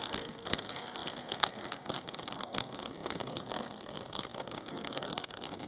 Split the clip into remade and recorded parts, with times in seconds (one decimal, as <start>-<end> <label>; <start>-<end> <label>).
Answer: 0.0-5.7 remade